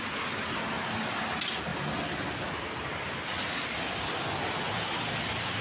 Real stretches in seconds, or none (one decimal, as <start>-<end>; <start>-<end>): 0.0-5.6